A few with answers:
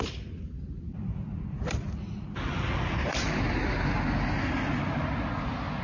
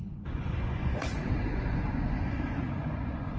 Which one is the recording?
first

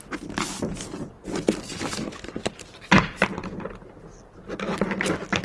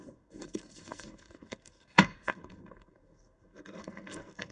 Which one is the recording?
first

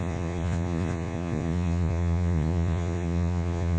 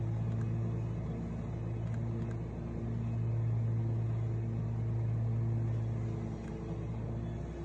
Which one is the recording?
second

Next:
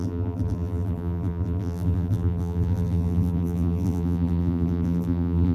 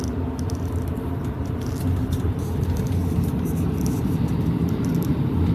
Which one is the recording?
second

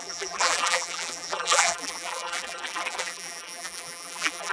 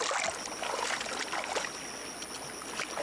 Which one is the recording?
second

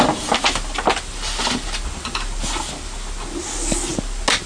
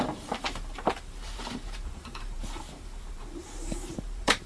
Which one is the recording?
first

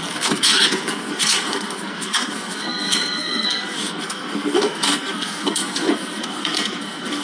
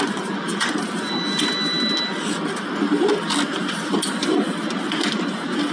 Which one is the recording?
second